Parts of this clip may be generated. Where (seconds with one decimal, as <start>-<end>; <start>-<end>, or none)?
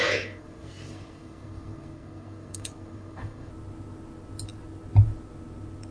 0.0-3.5